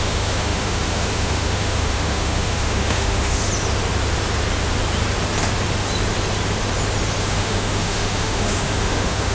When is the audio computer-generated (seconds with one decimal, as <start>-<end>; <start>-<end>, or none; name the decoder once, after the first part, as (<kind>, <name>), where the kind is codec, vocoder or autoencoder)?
0.0-3.5 (autoencoder, DAC-VAE); 7.2-9.3